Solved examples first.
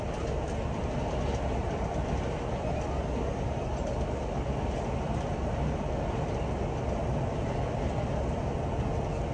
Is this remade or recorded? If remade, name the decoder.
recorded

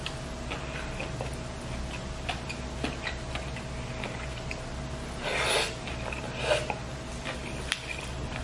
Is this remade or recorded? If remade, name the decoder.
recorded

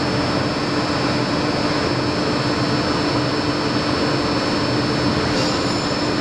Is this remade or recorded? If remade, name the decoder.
recorded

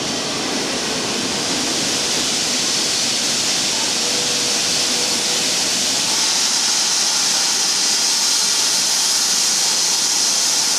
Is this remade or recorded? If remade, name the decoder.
recorded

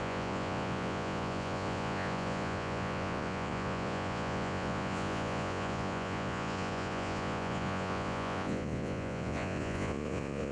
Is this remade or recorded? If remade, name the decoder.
remade, vocoder, Vocos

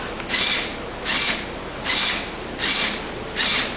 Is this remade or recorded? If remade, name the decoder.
recorded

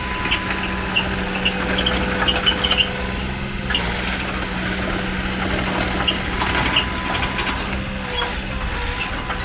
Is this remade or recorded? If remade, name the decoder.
recorded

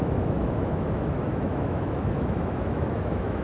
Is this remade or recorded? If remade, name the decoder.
remade, autoencoder, DAC-VAE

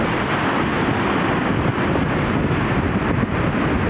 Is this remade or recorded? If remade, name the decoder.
recorded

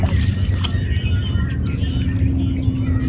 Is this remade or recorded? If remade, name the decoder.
recorded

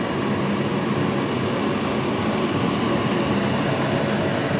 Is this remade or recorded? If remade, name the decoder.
recorded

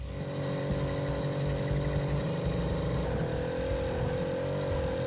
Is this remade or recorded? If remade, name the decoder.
recorded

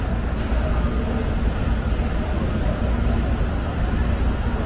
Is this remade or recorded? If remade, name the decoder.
recorded